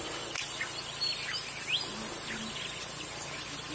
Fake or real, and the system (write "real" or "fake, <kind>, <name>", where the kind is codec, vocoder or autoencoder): real